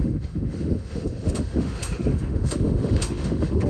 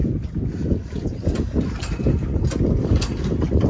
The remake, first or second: first